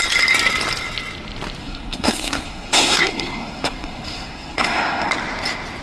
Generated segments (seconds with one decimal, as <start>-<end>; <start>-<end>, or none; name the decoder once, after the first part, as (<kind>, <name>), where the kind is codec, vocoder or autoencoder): 1.6-5.1 (codec, SNAC)